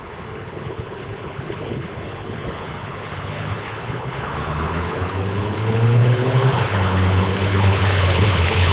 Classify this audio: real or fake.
fake